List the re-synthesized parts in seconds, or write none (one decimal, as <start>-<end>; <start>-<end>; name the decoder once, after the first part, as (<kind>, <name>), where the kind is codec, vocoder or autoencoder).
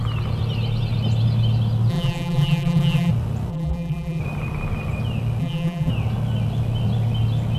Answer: 1.9-3.1 (vocoder, BigVGAN v2); 3.5-4.2; 5.4-5.9